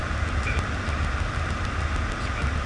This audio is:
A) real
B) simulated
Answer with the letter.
A